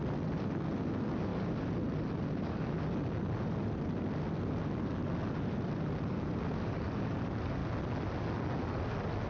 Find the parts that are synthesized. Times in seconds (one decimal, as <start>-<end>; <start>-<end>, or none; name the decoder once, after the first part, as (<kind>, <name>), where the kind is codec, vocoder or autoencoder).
none